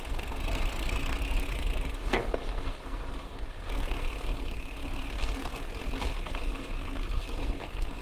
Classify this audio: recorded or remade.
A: remade